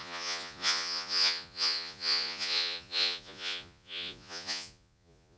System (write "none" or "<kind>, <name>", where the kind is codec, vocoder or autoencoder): vocoder, Vocos